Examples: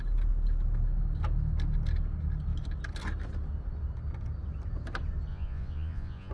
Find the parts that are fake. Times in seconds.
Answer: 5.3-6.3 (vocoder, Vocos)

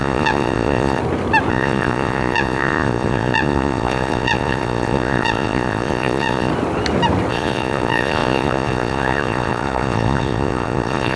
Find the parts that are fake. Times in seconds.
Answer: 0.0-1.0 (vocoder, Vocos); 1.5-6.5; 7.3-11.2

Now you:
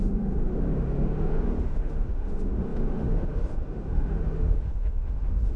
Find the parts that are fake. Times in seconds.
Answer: 0.0-5.6 (autoencoder, DAC-VAE)